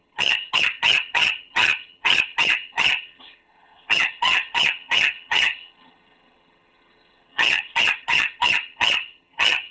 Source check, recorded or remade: remade